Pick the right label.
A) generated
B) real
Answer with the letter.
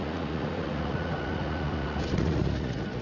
A